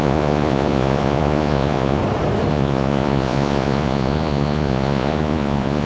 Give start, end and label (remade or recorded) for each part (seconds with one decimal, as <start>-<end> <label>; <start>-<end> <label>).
0.0-2.0 remade; 2.0-2.5 recorded; 2.5-5.9 remade